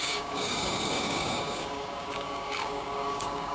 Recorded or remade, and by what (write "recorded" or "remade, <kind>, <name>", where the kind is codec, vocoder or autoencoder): remade, codec, DAC